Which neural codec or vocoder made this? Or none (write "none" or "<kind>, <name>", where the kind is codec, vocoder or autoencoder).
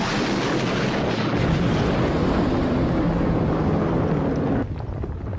none